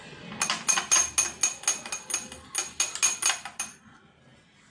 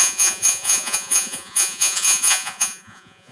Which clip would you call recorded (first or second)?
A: first